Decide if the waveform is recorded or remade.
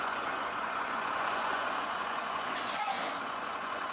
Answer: remade